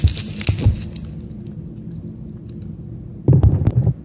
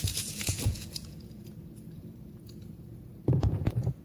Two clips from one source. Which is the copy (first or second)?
second